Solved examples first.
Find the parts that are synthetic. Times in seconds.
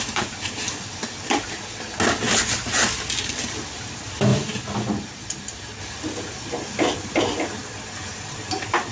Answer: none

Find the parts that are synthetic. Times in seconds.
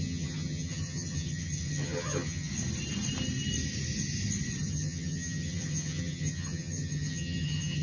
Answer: 0.0-2.5 (vocoder, HiFi-GAN); 4.6-7.8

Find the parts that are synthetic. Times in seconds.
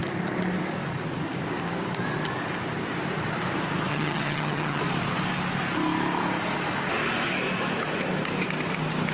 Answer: 3.9-4.8 (vocoder, HiFi-GAN)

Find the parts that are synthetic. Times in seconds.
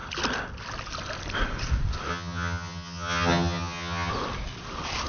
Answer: 2.1-4.1 (vocoder, HiFi-GAN)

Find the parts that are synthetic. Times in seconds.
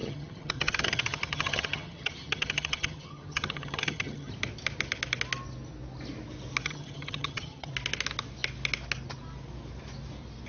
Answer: 0.0-4.3 (vocoder, HiFi-GAN); 6.6-7.7